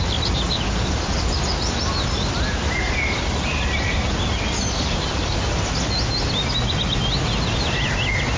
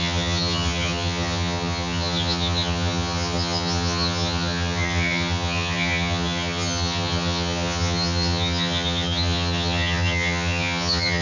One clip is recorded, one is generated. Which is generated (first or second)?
second